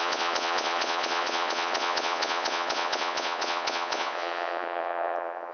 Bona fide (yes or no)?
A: no